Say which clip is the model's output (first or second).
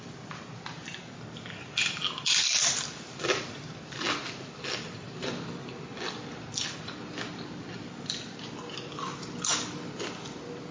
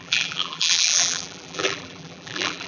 second